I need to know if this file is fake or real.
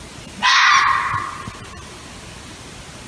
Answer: real